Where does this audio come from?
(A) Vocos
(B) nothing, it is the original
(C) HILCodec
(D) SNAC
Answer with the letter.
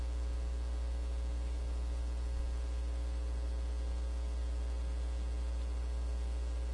B